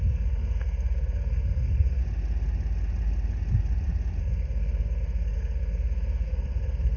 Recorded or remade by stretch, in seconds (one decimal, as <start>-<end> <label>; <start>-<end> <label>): 0.0-2.0 remade; 2.0-4.2 recorded; 4.2-7.0 remade